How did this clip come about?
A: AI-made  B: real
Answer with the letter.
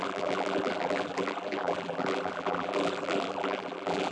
A